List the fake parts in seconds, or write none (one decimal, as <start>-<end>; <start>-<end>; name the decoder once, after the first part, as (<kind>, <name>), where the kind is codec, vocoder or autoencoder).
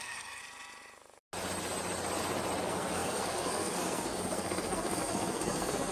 0.0-0.4 (codec, SNAC); 2.6-5.9